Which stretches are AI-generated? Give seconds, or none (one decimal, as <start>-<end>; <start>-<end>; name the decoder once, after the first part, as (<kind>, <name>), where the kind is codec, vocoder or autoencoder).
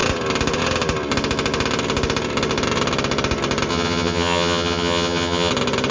3.7-5.5 (vocoder, HiFi-GAN)